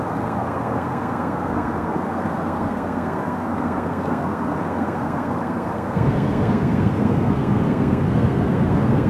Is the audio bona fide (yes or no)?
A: no